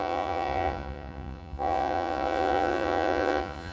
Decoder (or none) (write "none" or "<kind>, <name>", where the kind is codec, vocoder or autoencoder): vocoder, Vocos